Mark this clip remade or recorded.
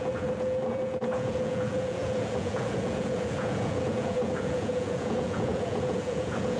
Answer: remade